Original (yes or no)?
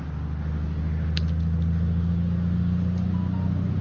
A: yes